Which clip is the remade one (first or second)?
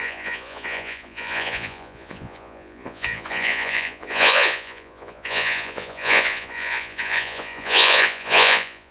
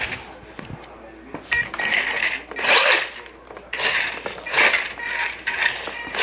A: first